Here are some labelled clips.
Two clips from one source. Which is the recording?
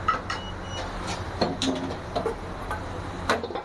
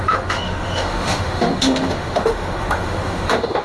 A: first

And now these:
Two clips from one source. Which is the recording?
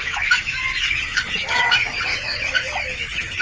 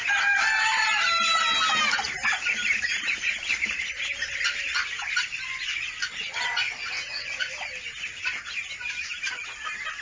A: second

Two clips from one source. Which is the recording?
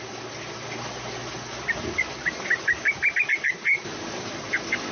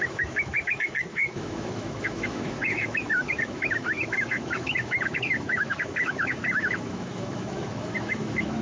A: first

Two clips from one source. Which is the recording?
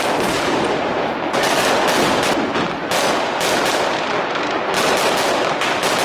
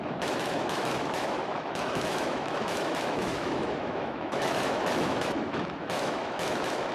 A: first